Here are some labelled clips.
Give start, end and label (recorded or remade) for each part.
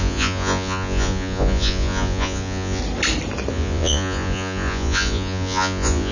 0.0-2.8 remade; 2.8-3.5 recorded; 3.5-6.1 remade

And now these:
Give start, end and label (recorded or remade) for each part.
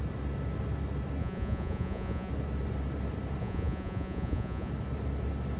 0.0-1.2 recorded; 1.2-2.3 remade; 2.3-3.4 recorded; 3.4-4.7 remade; 4.7-5.6 recorded